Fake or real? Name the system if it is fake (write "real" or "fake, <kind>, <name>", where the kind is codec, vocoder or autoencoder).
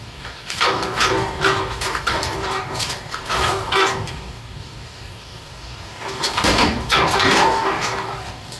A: fake, codec, DAC